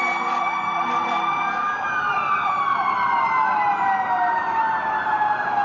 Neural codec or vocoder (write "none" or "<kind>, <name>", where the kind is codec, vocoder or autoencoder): none